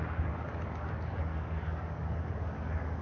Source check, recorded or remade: remade